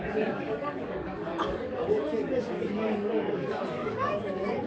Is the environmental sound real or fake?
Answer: fake